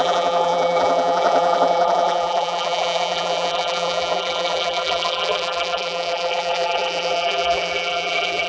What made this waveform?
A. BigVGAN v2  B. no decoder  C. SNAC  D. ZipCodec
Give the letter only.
A